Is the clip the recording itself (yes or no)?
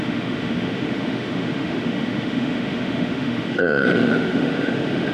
no